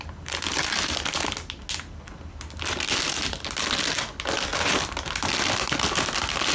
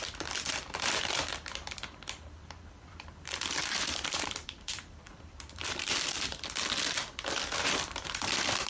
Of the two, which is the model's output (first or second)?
second